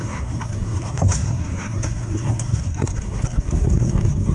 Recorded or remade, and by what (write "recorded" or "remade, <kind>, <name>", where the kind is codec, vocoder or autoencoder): remade, codec, SNAC